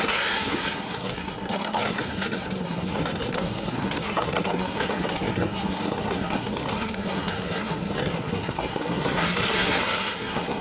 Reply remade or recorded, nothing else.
remade